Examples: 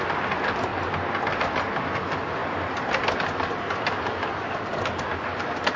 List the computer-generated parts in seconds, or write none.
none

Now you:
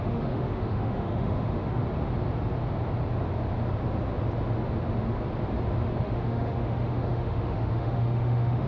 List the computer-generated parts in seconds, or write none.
0.0-1.8 (autoencoder, DAC-VAE); 6.0-8.7

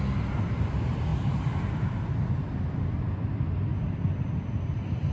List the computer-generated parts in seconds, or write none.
none

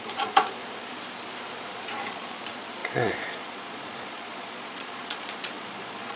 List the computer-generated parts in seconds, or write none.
0.0-0.6 (vocoder, Vocos); 1.7-6.2

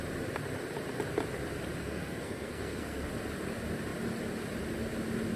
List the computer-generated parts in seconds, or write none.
1.8-3.1 (codec, SNAC)

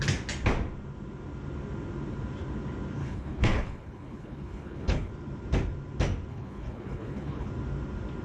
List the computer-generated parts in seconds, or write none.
3.0-5.1 (codec, HILCodec); 6.3-7.5

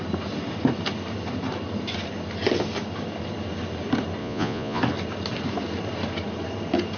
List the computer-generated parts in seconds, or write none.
4.2-4.8 (vocoder, Vocos)

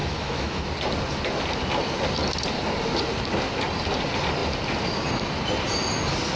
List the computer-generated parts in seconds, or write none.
0.0-0.7 (autoencoder, DAC-VAE)